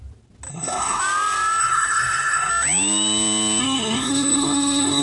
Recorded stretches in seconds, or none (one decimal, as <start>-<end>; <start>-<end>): 0.0-0.5; 1.0-1.6; 2.5-3.6